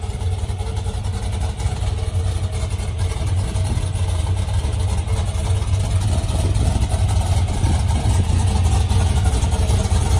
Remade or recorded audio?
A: recorded